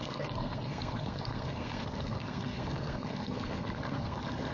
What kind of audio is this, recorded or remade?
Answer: remade